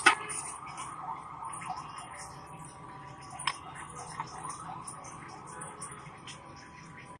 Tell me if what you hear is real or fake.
real